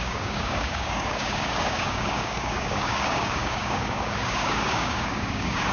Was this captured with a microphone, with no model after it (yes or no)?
no